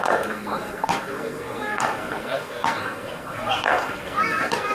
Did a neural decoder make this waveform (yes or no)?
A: yes